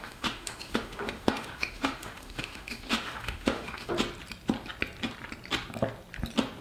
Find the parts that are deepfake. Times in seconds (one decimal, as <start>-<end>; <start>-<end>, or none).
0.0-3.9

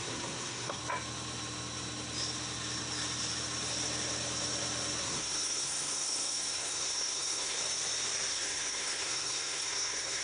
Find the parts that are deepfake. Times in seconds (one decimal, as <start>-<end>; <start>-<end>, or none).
0.0-0.8; 5.0-7.6; 8.3-10.2

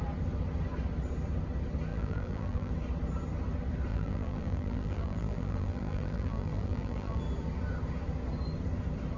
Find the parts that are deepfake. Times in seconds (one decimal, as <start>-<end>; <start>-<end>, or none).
1.9-2.7; 3.9-7.2

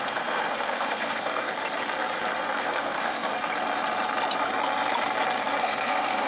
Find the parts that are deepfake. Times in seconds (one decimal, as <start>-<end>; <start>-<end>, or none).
0.0-1.5; 2.6-3.3; 5.6-6.3

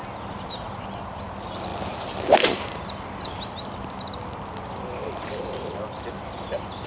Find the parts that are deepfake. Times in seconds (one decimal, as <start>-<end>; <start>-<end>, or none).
none